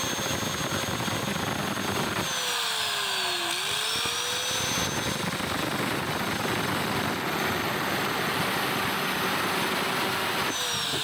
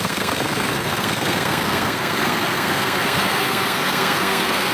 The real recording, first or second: first